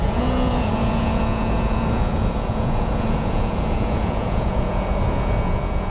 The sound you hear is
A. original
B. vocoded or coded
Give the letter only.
B